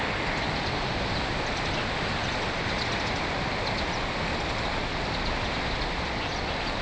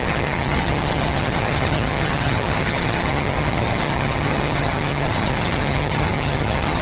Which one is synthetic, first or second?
second